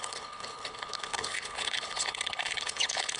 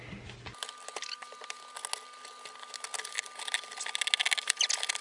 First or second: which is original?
second